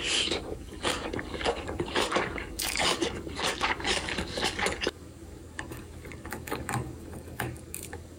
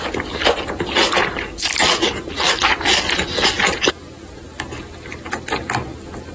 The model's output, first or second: first